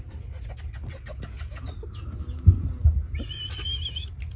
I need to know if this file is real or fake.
real